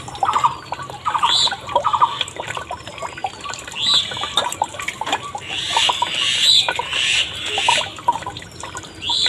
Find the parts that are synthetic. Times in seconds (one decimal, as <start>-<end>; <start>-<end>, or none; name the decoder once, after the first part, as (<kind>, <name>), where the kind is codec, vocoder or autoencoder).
0.0-3.2 (vocoder, BigVGAN v2); 4.7-5.8; 6.5-6.9; 8.2-9.3